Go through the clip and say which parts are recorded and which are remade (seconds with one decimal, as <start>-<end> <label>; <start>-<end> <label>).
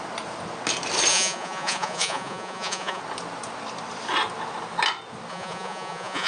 0.0-1.1 recorded; 1.1-3.0 remade; 3.0-5.3 recorded; 5.3-6.3 remade